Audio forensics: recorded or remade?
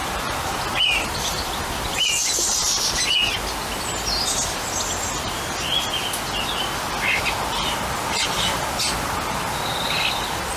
recorded